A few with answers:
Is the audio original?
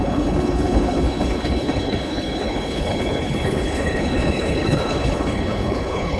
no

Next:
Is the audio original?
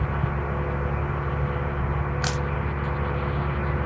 yes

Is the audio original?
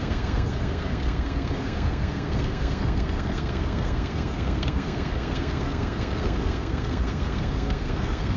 no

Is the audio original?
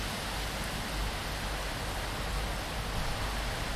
yes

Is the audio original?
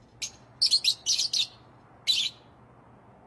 yes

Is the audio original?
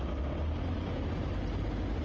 yes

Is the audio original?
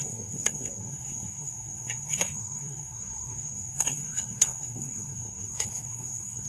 no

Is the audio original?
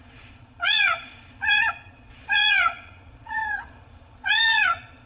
no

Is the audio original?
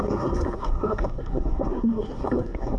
no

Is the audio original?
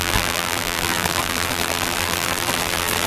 no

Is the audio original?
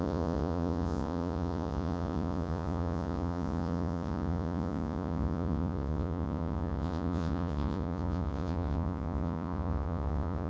no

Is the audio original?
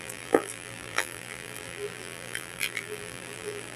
no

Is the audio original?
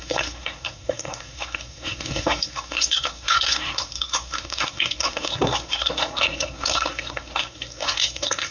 no